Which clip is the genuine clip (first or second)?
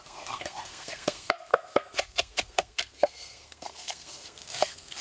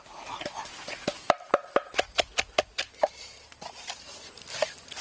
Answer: second